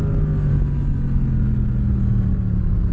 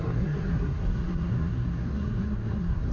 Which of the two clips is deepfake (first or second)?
second